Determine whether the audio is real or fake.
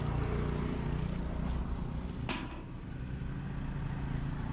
real